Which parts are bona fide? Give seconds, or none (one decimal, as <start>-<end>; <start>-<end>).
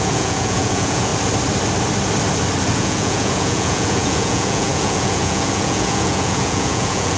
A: 1.1-2.7